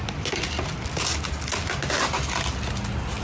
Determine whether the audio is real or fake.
real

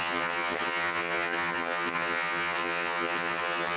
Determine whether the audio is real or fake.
fake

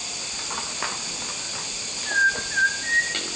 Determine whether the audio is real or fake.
real